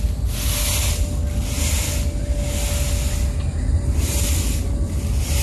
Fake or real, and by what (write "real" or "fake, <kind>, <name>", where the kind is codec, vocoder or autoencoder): real